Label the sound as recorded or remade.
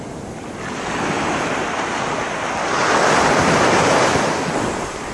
recorded